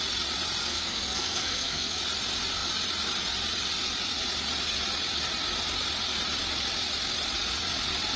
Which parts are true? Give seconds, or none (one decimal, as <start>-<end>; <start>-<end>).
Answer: 0.0-0.6; 2.0-8.2